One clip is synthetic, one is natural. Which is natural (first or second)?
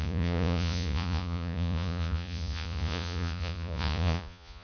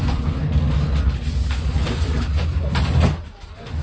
second